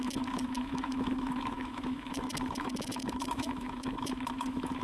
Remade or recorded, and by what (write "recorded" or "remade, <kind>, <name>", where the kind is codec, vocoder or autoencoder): remade, autoencoder, DAC-VAE